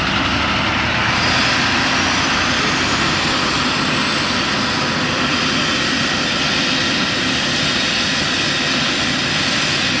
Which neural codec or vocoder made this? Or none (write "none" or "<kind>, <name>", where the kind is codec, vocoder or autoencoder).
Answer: none